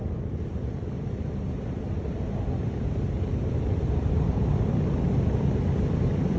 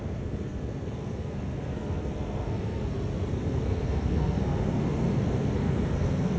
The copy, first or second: second